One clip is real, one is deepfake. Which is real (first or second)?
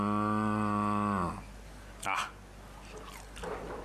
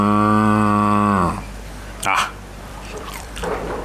first